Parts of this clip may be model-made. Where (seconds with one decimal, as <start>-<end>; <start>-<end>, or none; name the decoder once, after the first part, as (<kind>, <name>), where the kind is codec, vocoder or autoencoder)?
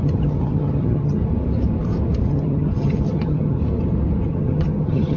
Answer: 0.0-1.2 (vocoder, HiFi-GAN); 2.3-3.6; 4.3-5.2